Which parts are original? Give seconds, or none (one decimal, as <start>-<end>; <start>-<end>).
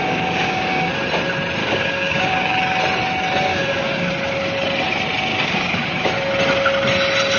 0.9-1.6; 2.8-3.5; 4.1-5.3; 6.1-7.4